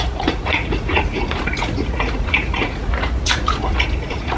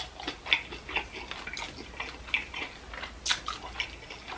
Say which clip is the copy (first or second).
first